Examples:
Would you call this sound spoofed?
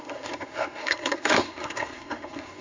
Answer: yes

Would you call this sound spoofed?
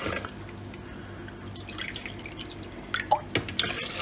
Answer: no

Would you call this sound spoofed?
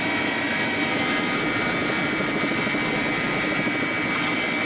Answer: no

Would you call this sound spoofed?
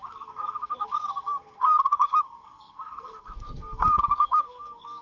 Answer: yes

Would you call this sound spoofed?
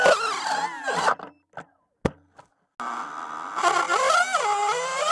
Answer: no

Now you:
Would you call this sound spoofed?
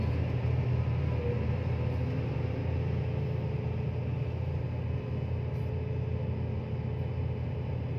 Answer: no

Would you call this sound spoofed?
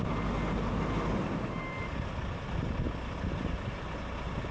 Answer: no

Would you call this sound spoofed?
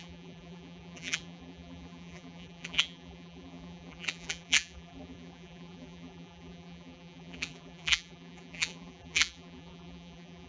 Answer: yes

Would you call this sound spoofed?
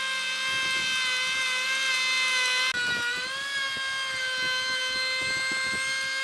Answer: no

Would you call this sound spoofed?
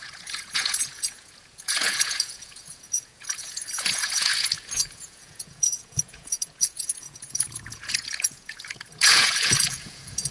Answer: yes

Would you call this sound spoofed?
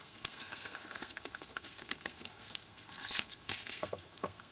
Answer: yes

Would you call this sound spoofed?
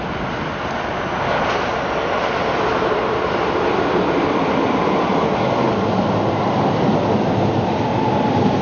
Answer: no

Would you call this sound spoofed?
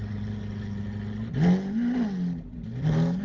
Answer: no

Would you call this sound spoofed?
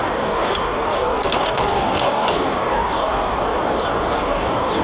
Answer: yes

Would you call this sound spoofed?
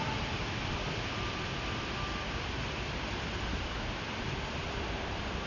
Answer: yes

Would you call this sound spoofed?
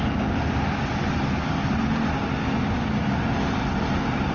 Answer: no